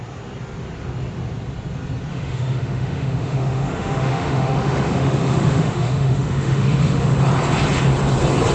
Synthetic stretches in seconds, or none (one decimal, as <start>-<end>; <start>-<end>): 2.1-7.2

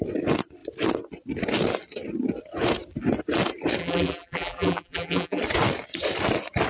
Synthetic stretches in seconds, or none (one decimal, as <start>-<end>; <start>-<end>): 3.8-5.4

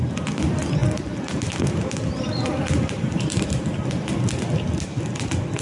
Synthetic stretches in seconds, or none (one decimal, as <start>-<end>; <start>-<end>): none